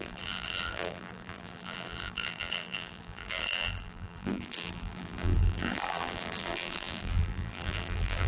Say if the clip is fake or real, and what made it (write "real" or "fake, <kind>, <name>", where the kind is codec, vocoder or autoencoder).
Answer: fake, vocoder, BigVGAN v2